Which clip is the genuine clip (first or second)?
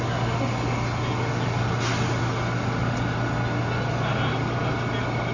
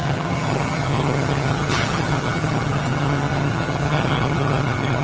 first